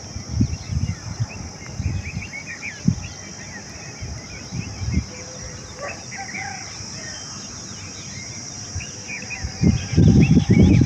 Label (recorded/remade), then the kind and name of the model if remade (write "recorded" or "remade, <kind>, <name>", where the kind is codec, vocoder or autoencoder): recorded